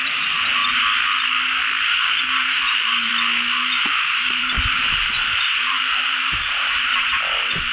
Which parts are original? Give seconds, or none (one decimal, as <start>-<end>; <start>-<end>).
0.6-2.2; 3.1-3.8; 6.9-7.7

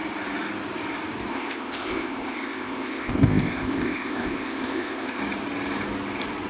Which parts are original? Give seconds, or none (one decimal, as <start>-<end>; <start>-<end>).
0.0-1.3; 5.2-6.5